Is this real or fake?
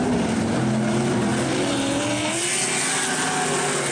real